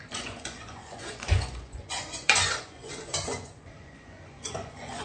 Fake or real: fake